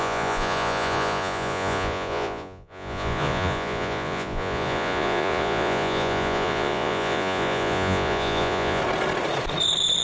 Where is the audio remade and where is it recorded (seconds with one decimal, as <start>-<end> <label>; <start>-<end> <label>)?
0.0-8.8 remade; 8.8-10.0 recorded